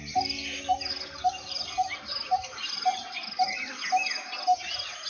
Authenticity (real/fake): real